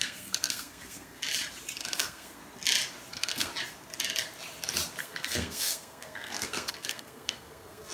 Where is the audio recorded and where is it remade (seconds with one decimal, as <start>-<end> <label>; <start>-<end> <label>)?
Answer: 0.0-1.2 remade; 1.2-1.8 recorded; 1.8-2.4 remade; 2.4-3.1 recorded; 3.1-3.5 remade; 3.5-5.0 recorded; 5.0-7.9 remade